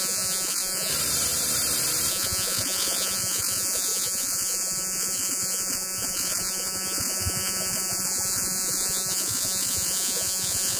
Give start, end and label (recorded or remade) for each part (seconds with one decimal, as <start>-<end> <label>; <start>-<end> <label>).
0.0-0.9 remade; 0.9-2.1 recorded; 2.1-10.8 remade